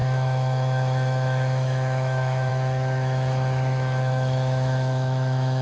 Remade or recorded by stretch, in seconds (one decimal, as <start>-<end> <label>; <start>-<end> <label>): 0.0-5.6 remade